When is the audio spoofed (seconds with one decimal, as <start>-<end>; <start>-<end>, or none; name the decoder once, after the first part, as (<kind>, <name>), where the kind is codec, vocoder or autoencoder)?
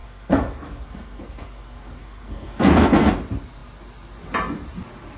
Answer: 0.0-3.1 (codec, SNAC)